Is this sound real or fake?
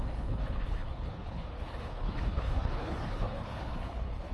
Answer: fake